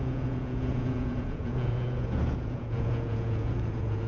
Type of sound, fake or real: fake